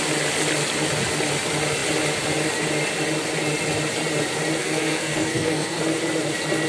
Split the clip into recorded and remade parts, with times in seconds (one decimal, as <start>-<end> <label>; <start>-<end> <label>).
0.0-4.6 recorded; 4.6-5.8 remade; 5.8-6.7 recorded